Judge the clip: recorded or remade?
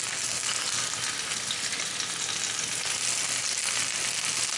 recorded